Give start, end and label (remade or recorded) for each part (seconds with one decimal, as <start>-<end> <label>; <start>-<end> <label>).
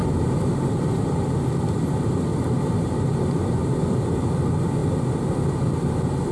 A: 0.0-1.2 remade; 1.2-2.3 recorded; 2.3-3.1 remade; 3.1-3.6 recorded; 3.6-4.3 remade; 4.3-6.3 recorded